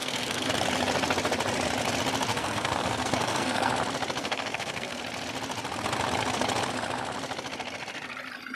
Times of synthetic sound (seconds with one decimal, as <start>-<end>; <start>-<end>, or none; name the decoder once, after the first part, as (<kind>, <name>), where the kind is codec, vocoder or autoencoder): 0.0-0.5 (codec, SNAC); 2.3-3.7; 4.2-5.0